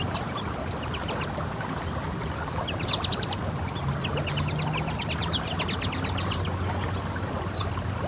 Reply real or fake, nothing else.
real